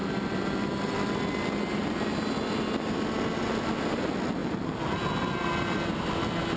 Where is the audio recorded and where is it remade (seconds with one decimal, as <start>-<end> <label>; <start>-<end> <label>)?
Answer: 0.0-6.6 recorded